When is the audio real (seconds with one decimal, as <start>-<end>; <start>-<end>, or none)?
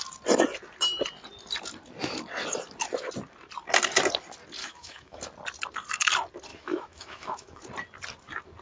0.0-4.6; 5.2-6.5; 7.6-8.6